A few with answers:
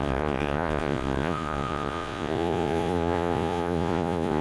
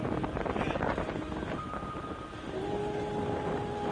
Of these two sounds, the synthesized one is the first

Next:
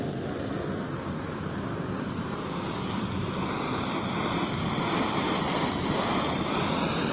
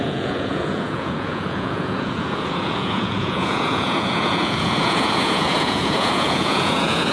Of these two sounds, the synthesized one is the second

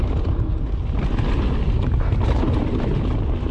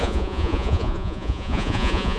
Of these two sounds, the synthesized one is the second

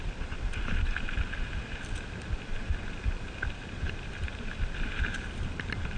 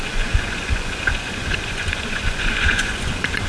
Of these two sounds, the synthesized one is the second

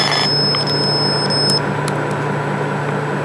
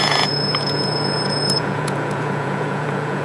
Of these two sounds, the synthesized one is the second